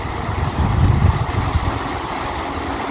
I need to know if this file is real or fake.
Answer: real